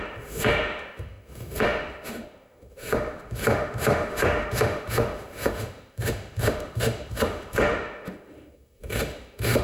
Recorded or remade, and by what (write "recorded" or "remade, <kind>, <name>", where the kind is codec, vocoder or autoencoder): remade, autoencoder, DAC-VAE